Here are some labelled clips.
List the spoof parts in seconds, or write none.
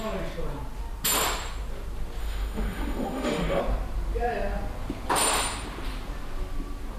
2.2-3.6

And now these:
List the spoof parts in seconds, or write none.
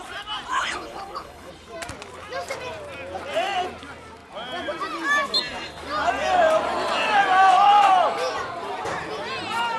0.5-1.5